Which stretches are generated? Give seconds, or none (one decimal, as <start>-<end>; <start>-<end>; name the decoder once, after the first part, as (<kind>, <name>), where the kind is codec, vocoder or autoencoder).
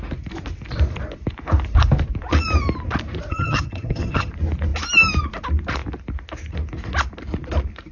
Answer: 3.3-4.3 (vocoder, HiFi-GAN)